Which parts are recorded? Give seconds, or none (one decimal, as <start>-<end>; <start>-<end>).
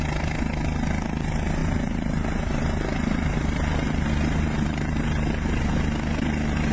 0.0-1.6; 5.6-6.7